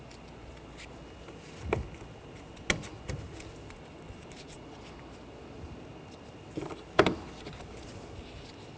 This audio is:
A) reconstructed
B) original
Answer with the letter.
B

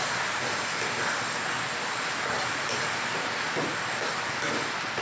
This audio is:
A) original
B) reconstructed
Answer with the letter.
A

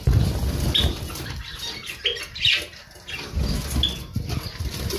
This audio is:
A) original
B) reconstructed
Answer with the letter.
A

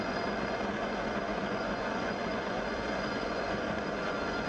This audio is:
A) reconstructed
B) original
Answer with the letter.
A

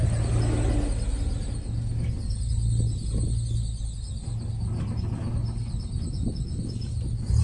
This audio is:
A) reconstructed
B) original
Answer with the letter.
B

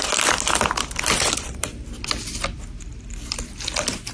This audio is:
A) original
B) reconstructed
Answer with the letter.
A